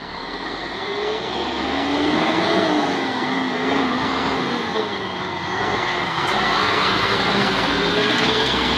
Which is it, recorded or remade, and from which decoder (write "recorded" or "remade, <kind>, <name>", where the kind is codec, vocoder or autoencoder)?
remade, codec, SNAC